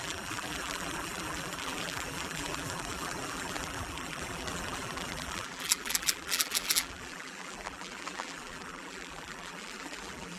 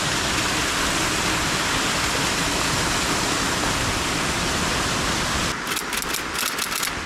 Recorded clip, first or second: second